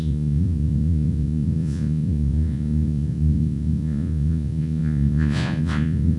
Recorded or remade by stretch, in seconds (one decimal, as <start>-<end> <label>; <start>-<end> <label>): 0.0-6.2 remade